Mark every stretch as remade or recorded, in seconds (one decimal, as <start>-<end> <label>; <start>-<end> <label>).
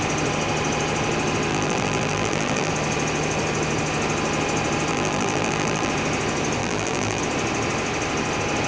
0.0-1.5 recorded; 1.5-2.7 remade; 2.7-4.9 recorded; 4.9-5.9 remade; 5.9-6.6 recorded; 6.6-7.2 remade; 7.2-8.7 recorded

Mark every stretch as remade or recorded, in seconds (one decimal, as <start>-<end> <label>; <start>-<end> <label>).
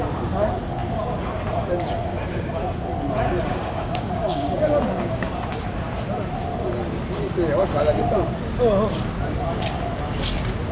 0.0-3.5 recorded; 3.5-5.3 remade; 5.3-10.7 recorded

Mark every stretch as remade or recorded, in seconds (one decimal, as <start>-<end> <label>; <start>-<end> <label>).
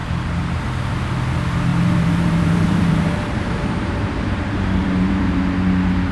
0.0-1.7 recorded; 1.7-5.4 remade; 5.4-6.1 recorded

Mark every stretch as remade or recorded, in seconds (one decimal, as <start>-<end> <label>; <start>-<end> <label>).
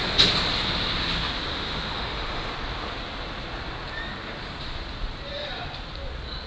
0.0-1.5 recorded; 1.5-2.5 remade; 2.5-6.5 recorded